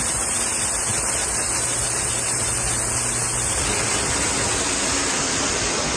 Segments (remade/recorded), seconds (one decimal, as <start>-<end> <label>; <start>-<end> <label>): 0.0-6.0 recorded